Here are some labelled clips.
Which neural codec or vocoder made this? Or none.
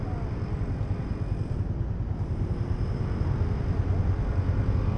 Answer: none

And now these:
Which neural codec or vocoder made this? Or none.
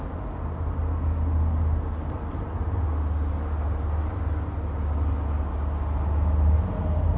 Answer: none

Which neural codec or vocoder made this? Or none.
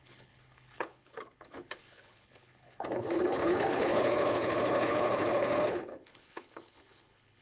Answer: codec, HILCodec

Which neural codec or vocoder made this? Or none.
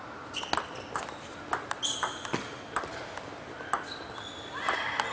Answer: none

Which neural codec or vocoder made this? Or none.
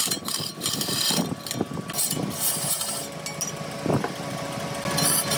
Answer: none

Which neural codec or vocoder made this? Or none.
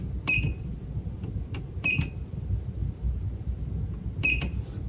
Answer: none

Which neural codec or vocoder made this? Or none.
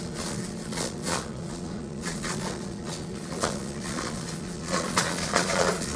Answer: vocoder, Vocos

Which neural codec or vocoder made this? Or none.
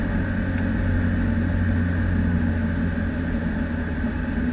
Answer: none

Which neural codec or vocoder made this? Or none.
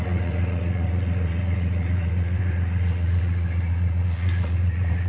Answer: vocoder, Vocos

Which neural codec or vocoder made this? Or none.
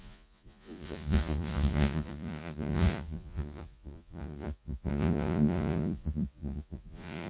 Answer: vocoder, Vocos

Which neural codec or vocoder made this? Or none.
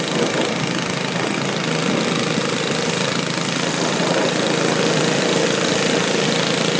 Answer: none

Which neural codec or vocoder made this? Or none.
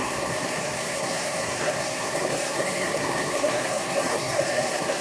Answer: codec, SNAC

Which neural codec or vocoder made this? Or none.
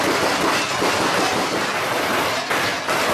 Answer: none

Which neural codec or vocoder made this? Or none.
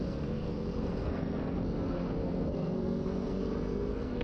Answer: codec, SNAC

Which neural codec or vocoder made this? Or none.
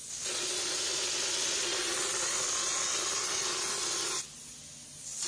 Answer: none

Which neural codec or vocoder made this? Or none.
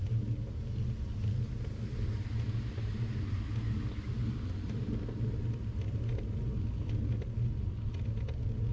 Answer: none